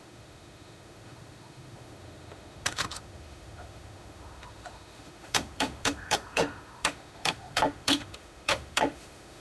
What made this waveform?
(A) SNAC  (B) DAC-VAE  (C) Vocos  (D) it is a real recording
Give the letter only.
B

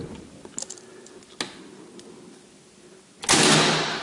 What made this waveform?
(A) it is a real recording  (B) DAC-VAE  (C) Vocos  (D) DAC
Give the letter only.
A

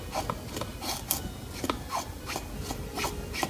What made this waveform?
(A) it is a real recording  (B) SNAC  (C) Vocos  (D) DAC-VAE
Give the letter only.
A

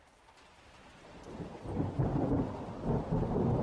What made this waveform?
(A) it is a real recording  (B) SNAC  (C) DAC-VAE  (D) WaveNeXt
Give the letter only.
A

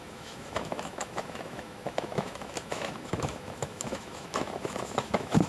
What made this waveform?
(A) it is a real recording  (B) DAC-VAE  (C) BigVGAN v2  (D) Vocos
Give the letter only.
B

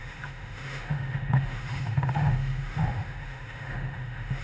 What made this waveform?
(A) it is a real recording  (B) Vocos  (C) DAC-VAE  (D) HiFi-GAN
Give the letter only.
C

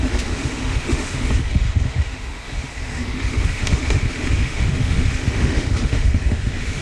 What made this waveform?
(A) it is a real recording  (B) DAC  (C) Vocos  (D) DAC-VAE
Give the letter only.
D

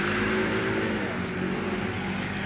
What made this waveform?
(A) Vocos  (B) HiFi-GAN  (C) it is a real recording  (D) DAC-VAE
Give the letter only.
C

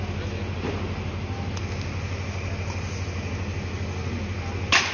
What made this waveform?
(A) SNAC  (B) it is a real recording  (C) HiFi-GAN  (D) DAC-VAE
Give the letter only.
B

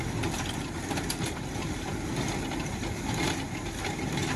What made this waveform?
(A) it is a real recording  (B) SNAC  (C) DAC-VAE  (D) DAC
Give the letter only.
A